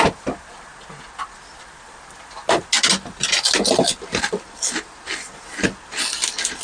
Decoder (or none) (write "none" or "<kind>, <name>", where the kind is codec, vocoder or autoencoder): none